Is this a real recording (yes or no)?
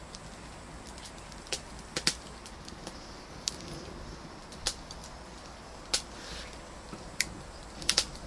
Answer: yes